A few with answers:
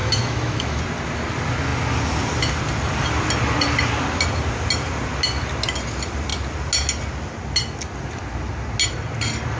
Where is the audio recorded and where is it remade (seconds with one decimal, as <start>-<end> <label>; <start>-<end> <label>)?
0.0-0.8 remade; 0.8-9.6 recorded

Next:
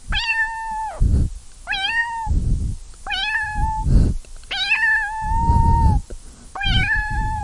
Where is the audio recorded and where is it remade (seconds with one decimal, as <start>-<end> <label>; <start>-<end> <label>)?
0.0-6.8 recorded; 6.8-7.4 remade

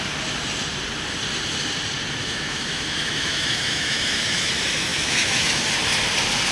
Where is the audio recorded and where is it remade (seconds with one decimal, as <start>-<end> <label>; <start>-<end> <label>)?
0.0-2.2 recorded; 2.2-4.5 remade; 4.5-4.9 recorded; 4.9-5.7 remade; 5.7-6.5 recorded

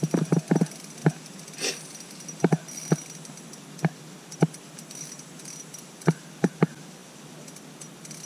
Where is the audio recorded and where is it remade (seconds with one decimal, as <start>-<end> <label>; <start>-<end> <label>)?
0.0-8.3 recorded